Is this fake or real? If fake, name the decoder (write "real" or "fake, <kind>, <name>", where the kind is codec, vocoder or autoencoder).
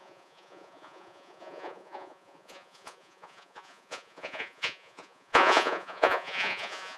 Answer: fake, vocoder, Vocos